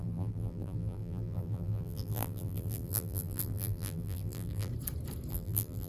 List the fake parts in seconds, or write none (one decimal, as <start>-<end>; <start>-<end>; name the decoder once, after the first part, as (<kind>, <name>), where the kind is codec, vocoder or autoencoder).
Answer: 0.0-4.7 (vocoder, BigVGAN v2); 5.3-5.9